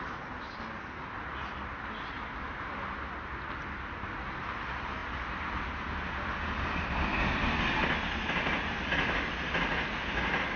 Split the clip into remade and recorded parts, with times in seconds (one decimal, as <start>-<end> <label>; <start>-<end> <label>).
0.0-10.6 recorded